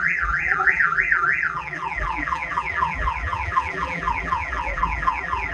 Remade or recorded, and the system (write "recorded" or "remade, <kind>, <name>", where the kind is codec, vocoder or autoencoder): remade, vocoder, BigVGAN v2